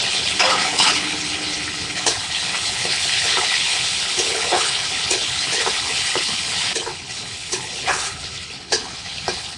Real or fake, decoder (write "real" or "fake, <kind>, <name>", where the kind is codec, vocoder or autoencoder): fake, codec, HILCodec